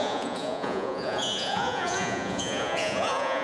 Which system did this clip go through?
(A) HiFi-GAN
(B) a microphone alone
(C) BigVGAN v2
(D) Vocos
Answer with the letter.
D